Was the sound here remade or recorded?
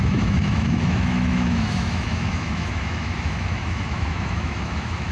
remade